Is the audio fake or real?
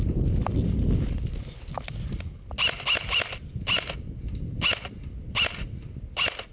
real